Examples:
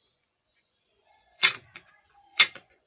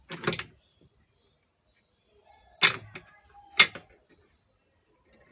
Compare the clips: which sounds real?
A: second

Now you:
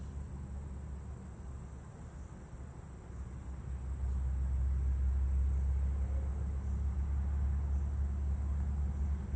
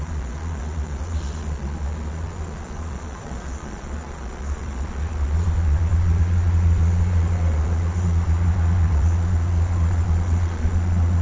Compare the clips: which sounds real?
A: first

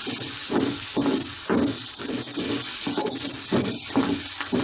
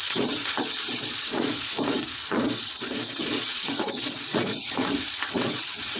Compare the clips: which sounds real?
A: first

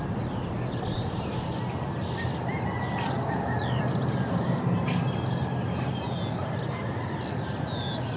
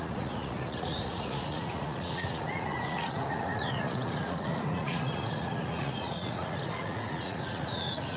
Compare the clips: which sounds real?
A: first